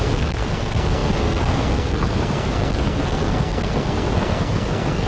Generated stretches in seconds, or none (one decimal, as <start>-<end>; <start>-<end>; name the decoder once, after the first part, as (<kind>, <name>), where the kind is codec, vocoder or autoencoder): 0.0-5.1 (codec, SNAC)